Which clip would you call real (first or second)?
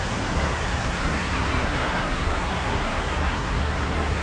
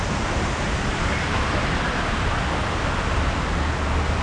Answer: second